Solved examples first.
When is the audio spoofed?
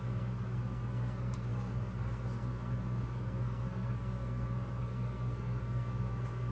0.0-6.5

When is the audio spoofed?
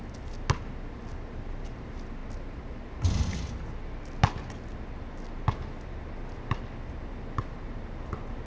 none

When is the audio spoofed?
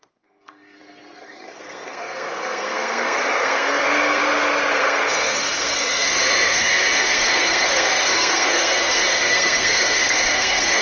0.0-4.2; 4.7-10.8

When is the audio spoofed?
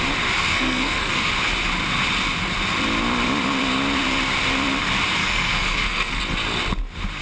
0.5-1.3; 5.2-6.2